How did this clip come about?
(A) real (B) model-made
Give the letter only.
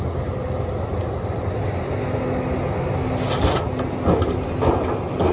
A